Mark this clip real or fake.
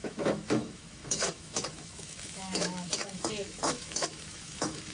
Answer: fake